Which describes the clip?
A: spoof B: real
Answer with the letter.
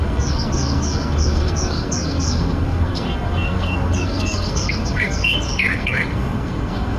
A